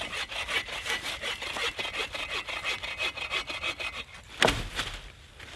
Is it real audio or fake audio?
real